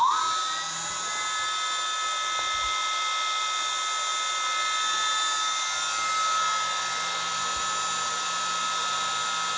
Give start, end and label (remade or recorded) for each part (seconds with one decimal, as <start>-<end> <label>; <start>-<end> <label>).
0.0-9.6 recorded